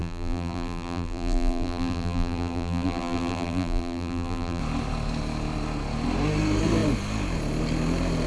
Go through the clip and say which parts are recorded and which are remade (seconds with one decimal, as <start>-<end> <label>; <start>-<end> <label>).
0.0-4.6 remade; 4.6-8.3 recorded